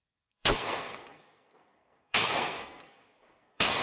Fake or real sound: fake